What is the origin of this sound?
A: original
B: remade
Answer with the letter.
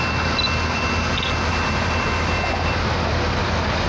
A